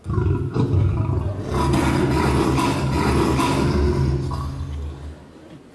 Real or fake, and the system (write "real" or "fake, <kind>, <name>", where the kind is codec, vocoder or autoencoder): real